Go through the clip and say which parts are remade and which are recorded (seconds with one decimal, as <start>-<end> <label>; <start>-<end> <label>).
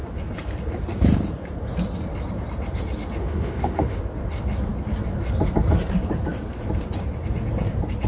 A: 0.0-3.2 recorded; 3.2-4.0 remade; 4.0-8.1 recorded